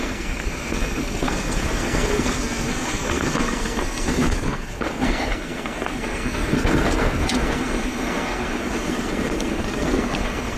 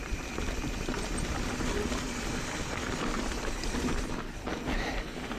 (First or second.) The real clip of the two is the second